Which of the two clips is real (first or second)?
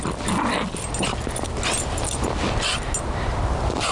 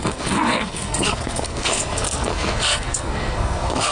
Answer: first